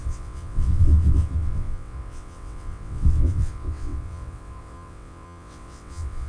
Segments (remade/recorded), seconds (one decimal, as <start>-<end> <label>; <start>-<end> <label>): 0.0-6.3 remade